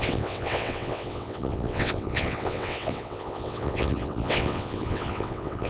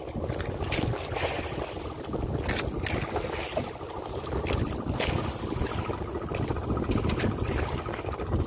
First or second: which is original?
second